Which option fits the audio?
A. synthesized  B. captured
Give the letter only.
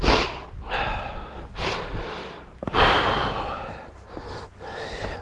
B